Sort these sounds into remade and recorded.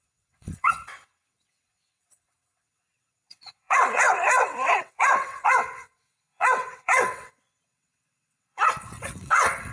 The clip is remade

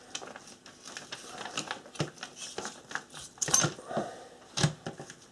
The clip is recorded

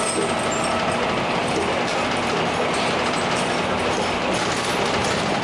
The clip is recorded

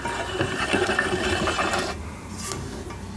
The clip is recorded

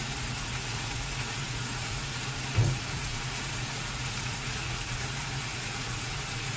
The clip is remade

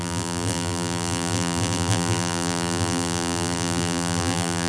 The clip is remade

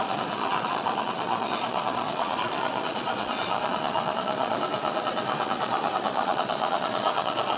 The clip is remade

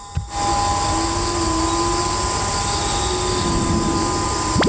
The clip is recorded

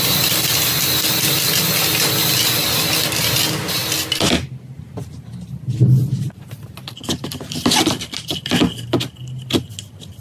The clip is recorded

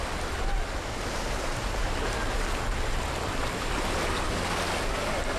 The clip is recorded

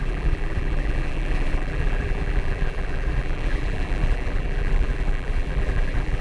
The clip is remade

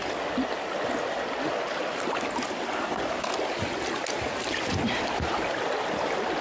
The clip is recorded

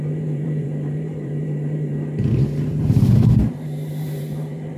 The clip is remade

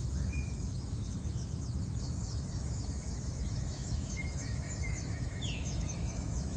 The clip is remade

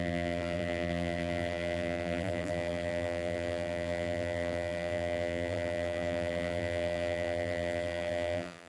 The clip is remade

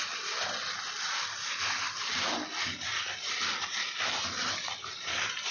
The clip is recorded